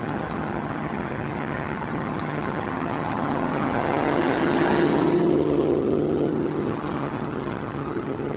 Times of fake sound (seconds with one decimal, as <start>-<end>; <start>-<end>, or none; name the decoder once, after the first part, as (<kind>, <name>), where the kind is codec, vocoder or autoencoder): 0.0-8.4 (vocoder, HiFi-GAN)